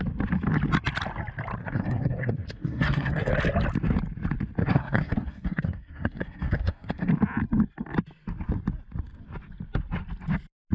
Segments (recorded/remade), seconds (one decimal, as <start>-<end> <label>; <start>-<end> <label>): 0.0-1.6 recorded; 1.6-3.3 remade; 3.3-4.6 recorded; 4.6-7.1 remade; 7.1-10.7 recorded